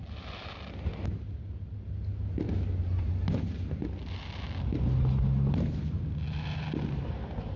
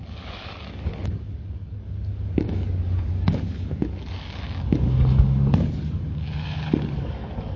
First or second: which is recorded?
first